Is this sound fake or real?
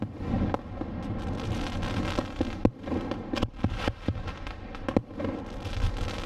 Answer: real